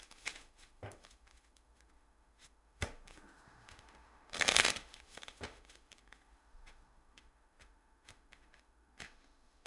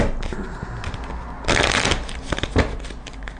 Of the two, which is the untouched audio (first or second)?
second